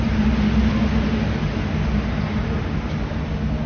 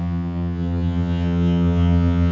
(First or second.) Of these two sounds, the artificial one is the second